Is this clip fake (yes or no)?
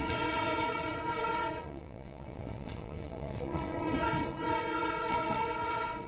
yes